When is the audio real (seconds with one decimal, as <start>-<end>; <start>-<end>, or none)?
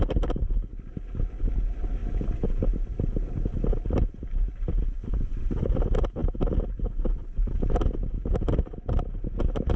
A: 0.0-9.8